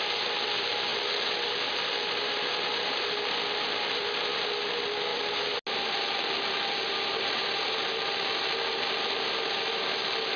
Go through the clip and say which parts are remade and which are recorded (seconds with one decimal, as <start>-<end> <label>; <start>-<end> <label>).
0.0-0.9 remade; 0.9-1.7 recorded; 1.7-5.1 remade; 5.1-5.9 recorded; 5.9-10.4 remade